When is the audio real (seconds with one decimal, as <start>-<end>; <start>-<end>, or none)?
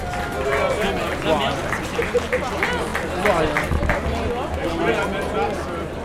0.0-1.6; 2.5-6.0